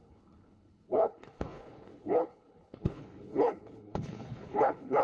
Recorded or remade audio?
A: remade